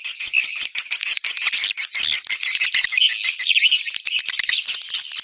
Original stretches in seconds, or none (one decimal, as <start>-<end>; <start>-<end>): 0.0-5.2